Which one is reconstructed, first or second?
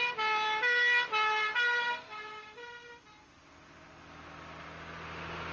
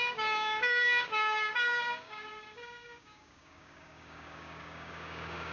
second